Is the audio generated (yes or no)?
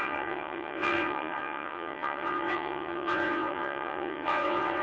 yes